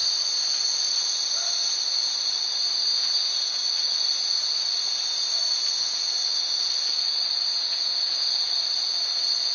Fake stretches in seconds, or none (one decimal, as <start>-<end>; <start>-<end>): none